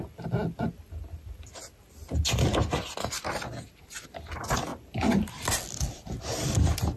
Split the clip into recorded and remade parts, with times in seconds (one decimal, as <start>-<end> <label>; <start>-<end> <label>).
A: 0.0-7.0 recorded